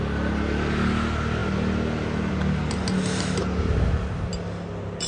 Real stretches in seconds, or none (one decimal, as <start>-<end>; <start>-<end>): 0.0-5.1